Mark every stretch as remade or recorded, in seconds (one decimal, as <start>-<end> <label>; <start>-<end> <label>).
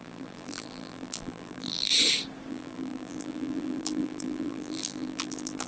0.0-1.9 remade; 1.9-2.5 recorded; 2.5-5.7 remade